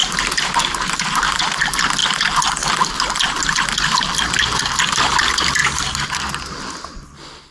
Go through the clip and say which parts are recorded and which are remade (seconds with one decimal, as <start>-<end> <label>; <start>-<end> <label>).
0.0-1.4 remade; 1.4-5.6 recorded; 5.6-6.2 remade; 6.2-7.5 recorded